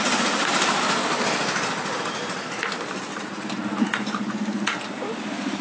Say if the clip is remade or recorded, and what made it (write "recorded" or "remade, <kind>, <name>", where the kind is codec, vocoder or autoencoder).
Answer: recorded